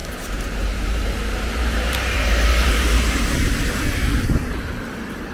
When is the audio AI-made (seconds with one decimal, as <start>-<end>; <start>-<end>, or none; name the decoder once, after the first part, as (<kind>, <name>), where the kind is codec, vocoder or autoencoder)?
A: 0.0-3.2 (vocoder, BigVGAN v2)